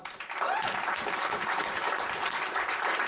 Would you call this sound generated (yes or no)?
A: no